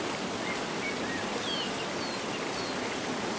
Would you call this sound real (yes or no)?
yes